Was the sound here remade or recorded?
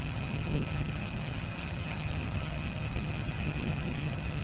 remade